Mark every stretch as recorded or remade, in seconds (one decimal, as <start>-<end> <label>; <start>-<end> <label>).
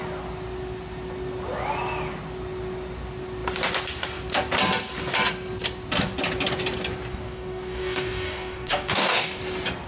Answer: 0.0-7.1 recorded; 7.1-9.4 remade; 9.4-9.9 recorded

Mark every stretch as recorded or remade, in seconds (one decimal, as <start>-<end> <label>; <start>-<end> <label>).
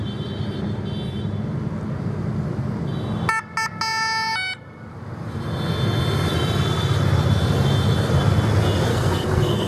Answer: 0.0-8.9 recorded; 8.9-9.7 remade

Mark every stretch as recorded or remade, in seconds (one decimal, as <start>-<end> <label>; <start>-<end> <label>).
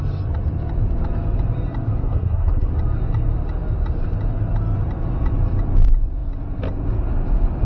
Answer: 0.0-2.0 recorded; 2.0-2.7 remade; 2.7-7.7 recorded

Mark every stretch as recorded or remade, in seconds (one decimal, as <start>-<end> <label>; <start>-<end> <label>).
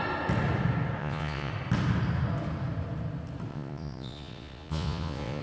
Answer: 0.0-1.0 recorded; 1.0-1.5 remade; 1.5-3.5 recorded; 3.5-5.4 remade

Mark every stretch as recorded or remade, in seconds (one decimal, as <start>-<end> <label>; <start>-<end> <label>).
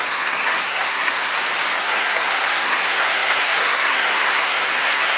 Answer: 0.0-1.3 remade; 1.3-1.8 recorded; 1.8-5.2 remade